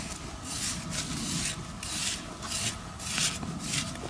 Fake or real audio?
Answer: real